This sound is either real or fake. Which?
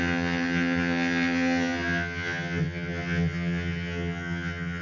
fake